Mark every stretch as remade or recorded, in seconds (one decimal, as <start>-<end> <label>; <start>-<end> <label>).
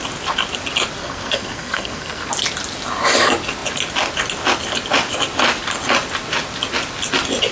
0.0-1.0 recorded; 1.0-2.3 remade; 2.3-7.5 recorded